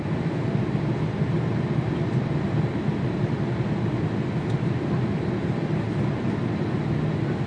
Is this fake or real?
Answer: real